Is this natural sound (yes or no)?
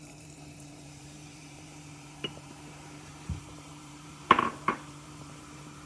no